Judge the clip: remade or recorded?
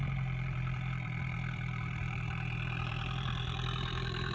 remade